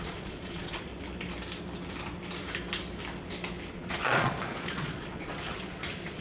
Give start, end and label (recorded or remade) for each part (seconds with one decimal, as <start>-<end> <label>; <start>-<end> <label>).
0.0-0.9 remade; 0.9-3.7 recorded; 3.7-6.2 remade